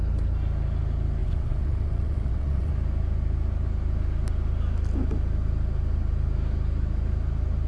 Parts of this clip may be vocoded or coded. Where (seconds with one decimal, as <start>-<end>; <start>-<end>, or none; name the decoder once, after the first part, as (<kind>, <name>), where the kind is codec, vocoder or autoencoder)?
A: 1.2-2.7 (vocoder, WaveNeXt)